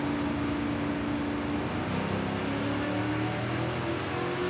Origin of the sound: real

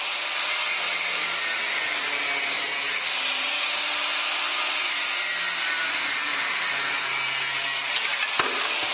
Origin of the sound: real